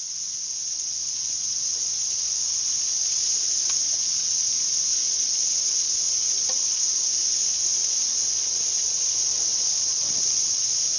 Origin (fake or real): real